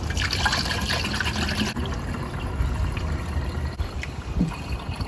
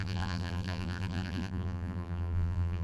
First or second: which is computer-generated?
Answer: second